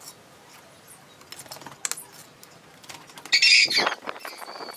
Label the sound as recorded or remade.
recorded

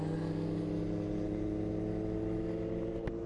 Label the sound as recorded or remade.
recorded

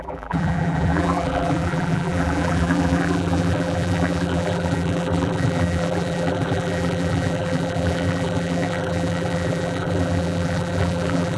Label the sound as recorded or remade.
remade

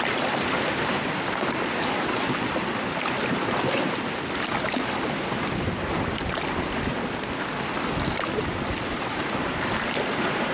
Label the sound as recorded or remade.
remade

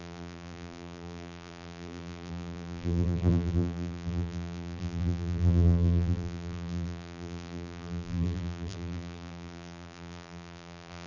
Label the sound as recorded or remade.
remade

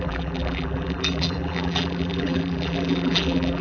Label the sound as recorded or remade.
remade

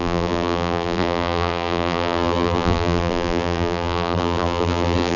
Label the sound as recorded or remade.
remade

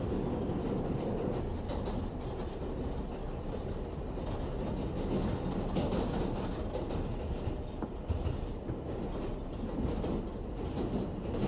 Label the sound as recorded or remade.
recorded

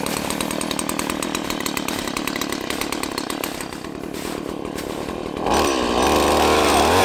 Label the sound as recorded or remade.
recorded